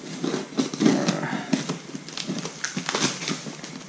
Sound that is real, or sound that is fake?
real